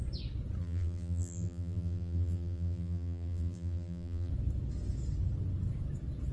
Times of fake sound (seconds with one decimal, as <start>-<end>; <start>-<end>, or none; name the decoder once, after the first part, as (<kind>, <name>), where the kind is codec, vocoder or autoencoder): 0.6-4.3 (vocoder, BigVGAN v2)